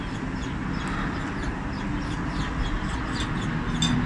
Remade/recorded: recorded